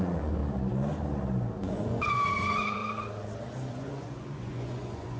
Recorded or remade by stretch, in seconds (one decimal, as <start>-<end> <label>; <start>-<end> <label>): 0.0-0.4 remade; 0.4-1.6 recorded; 1.6-2.8 remade; 2.8-3.7 recorded; 3.7-5.2 remade